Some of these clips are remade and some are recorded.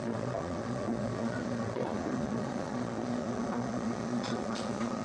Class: remade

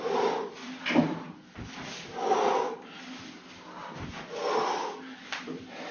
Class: recorded